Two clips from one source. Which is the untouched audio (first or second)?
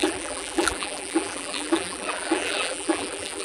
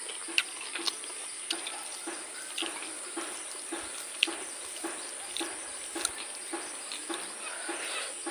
second